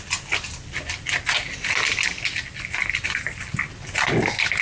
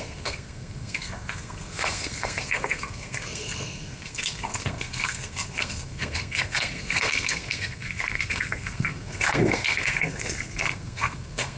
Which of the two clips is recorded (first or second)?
first